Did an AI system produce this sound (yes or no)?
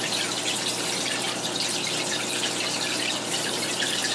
no